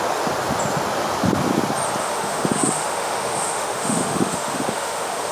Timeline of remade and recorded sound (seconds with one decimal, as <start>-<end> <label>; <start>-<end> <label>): 0.0-2.0 recorded; 2.0-5.3 remade